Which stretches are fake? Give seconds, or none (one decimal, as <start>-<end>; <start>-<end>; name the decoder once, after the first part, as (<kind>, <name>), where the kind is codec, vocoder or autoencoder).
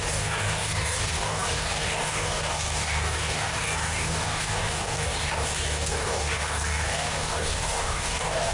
0.0-8.5 (codec, DAC)